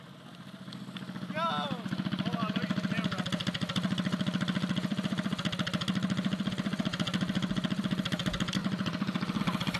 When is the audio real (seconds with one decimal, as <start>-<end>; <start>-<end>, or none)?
0.0-8.6; 9.4-9.8

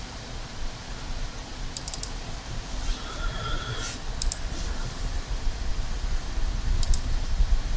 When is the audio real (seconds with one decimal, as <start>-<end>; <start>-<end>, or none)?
0.0-1.5; 5.7-7.8